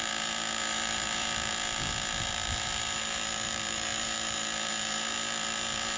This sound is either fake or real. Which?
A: fake